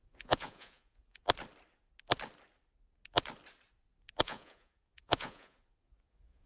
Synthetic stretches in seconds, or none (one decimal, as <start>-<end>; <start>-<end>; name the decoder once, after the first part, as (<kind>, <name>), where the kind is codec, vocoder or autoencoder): 0.0-1.2 (vocoder, Vocos); 4.2-6.5